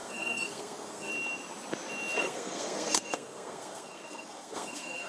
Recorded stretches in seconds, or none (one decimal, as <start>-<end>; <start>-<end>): 1.1-2.2